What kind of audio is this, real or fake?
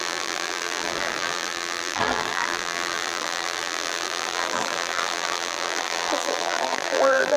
fake